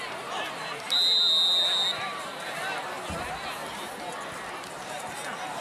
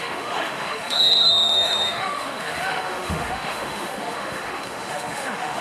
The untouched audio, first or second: first